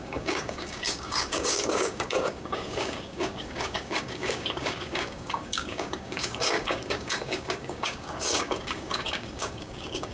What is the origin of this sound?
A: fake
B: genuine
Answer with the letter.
A